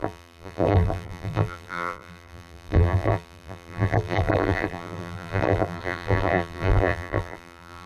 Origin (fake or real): fake